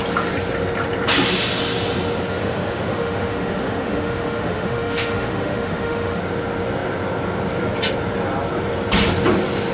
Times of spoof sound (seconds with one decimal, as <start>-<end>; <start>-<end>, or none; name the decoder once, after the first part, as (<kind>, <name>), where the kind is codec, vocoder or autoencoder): 2.3-6.2 (autoencoder, DAC-VAE)